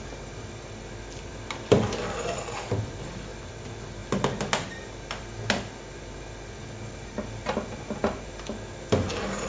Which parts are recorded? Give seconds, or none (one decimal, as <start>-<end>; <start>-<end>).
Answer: 0.0-1.3; 3.5-8.0; 9.1-9.5